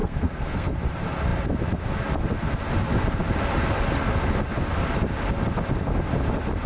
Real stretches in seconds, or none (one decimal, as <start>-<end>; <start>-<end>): 0.7-6.7